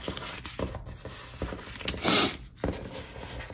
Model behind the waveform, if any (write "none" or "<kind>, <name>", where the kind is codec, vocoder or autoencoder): none